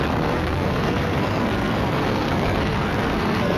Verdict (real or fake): fake